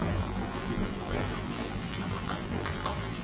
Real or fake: fake